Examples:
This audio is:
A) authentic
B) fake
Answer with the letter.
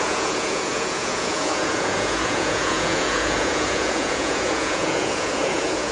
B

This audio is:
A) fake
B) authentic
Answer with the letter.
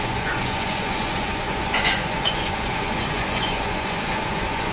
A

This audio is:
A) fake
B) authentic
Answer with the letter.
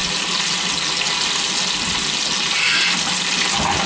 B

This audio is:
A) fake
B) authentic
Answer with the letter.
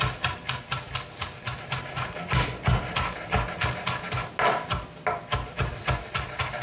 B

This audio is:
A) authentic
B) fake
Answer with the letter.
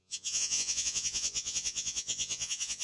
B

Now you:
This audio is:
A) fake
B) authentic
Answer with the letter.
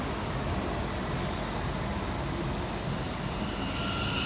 B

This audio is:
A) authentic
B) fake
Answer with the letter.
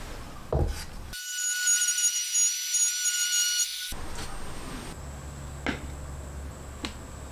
A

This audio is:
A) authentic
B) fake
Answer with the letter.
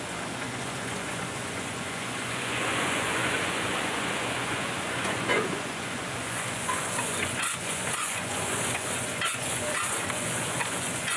B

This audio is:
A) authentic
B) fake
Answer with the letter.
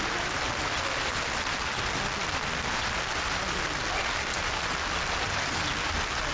A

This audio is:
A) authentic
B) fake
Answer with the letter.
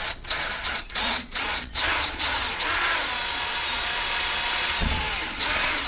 B